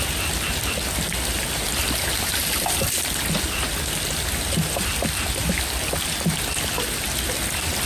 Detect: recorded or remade recorded